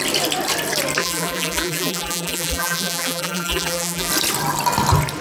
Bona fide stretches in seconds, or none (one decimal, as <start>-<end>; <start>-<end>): 0.0-1.0; 4.1-5.2